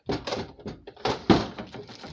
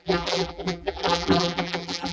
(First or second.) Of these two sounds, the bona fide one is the first